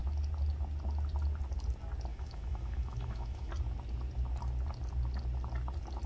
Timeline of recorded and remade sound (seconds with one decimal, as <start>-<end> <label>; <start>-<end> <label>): 0.0-2.1 recorded; 2.1-3.5 remade; 3.5-6.1 recorded